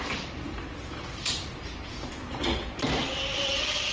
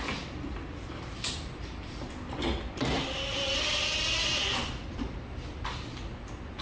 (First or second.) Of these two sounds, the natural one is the second